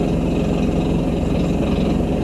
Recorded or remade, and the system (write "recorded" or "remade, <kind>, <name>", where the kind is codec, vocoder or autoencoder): recorded